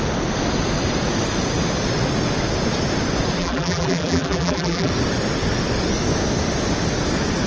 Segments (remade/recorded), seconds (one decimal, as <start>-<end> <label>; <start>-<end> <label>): 0.0-3.4 recorded; 3.4-4.9 remade; 4.9-7.5 recorded